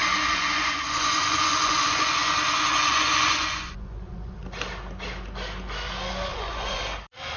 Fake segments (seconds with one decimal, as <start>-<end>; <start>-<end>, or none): 0.0-4.4; 6.3-6.8